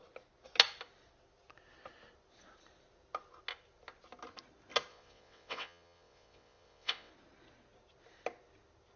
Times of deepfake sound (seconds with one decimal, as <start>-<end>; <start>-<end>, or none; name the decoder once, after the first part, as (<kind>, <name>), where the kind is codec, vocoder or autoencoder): 4.9-7.1 (vocoder, WaveNeXt)